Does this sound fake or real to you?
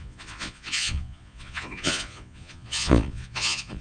fake